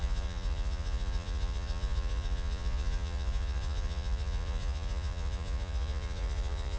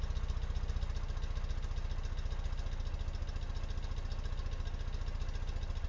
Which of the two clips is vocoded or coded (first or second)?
first